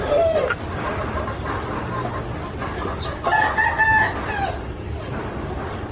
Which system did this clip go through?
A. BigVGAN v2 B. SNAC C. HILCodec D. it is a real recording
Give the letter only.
D